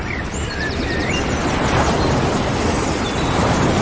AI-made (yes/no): yes